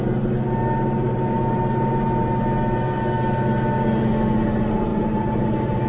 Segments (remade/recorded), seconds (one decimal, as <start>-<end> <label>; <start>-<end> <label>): 0.0-5.9 recorded